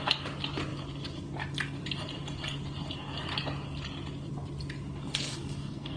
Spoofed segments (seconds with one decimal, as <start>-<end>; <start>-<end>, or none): 5.3-6.0